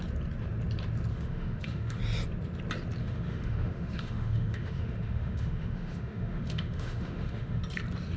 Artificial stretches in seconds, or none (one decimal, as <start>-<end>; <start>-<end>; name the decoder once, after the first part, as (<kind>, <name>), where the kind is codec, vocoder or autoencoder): 1.1-2.0 (autoencoder, DAC-VAE); 3.0-7.6